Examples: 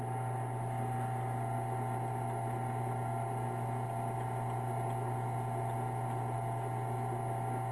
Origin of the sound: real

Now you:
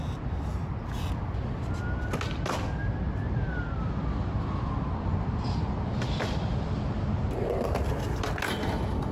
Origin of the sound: real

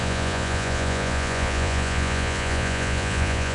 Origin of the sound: fake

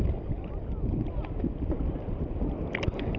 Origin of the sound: real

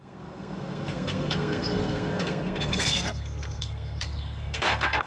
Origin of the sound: fake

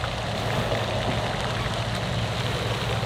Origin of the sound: real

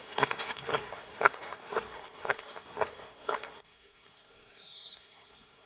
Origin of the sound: fake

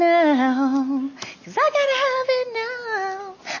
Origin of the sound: real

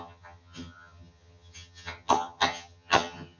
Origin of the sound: fake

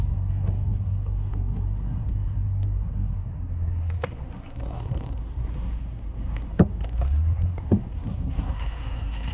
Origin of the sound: fake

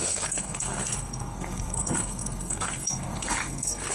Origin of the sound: fake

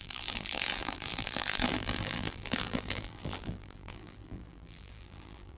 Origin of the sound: fake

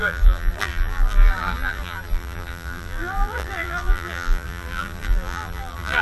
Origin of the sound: fake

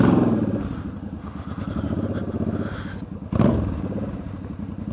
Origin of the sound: real